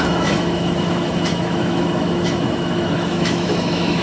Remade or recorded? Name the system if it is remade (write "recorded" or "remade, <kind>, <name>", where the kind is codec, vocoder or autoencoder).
remade, autoencoder, DAC-VAE